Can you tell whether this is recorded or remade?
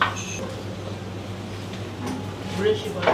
recorded